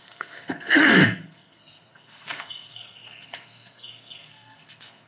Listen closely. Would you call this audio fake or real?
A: fake